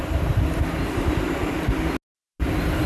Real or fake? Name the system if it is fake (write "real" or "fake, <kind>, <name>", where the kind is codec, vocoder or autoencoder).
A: real